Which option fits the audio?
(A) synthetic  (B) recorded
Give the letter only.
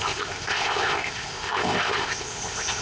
A